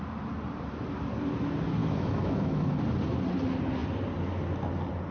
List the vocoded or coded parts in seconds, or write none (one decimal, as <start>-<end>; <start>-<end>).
1.8-2.7